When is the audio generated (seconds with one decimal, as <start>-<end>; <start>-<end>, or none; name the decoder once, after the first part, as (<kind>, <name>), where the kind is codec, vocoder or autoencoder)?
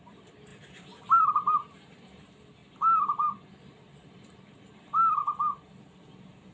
0.0-6.5 (vocoder, BigVGAN v2)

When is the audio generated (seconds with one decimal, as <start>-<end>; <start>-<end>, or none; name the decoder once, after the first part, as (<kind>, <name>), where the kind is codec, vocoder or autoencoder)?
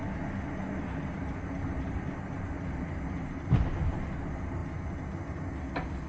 none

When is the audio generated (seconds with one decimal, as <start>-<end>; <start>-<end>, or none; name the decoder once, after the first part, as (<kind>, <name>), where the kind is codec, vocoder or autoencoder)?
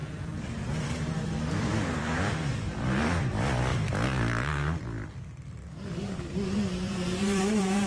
0.0-3.7 (vocoder, BigVGAN v2); 4.8-7.9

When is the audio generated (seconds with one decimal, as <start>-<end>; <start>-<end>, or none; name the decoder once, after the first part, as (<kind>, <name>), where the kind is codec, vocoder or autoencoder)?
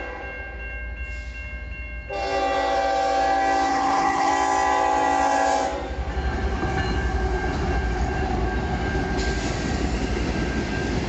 3.7-4.3 (codec, HILCodec)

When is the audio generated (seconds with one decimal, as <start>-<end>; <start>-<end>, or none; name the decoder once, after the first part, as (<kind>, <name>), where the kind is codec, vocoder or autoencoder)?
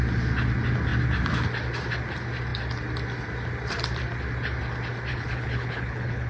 5.1-6.3 (codec, HILCodec)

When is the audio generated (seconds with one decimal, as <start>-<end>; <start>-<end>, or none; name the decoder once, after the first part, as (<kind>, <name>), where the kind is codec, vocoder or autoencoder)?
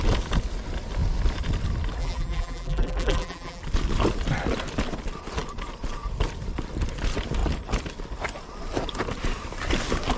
2.0-3.6 (vocoder, BigVGAN v2)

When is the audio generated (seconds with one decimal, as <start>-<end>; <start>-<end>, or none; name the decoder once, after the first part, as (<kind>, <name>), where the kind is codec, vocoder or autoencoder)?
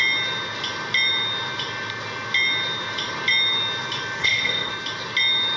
4.2-4.7 (codec, ZipCodec)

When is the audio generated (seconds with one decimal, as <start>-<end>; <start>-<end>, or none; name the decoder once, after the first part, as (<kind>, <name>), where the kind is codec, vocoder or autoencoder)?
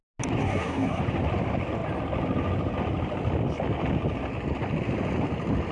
0.4-1.0 (codec, SNAC)